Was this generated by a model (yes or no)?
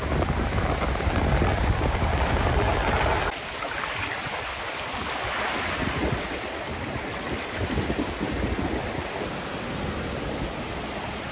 no